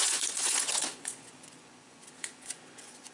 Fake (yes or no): yes